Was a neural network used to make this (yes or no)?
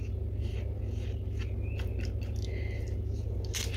no